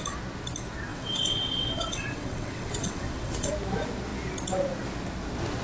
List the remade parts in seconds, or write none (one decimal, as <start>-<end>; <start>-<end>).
0.9-3.5